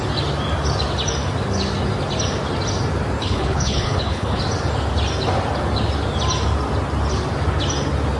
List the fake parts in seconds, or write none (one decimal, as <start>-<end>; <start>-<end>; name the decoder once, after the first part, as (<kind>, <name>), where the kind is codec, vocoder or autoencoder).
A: 3.2-4.4 (codec, HILCodec)